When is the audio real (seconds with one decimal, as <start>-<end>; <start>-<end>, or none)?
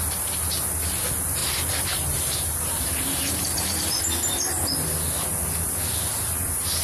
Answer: 0.0-1.4; 4.0-6.8